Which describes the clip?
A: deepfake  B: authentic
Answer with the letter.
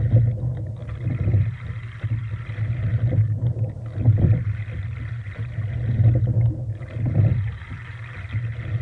B